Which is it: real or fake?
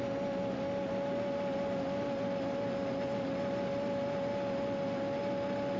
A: real